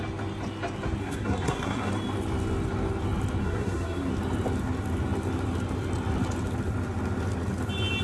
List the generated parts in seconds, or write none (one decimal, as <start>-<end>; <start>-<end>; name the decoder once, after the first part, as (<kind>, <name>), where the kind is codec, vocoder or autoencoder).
1.0-1.9 (codec, SNAC); 3.4-4.1